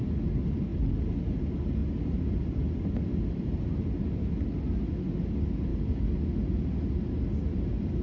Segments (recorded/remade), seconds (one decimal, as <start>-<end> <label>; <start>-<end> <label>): 0.0-8.0 recorded